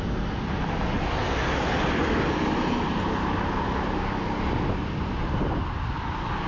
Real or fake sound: real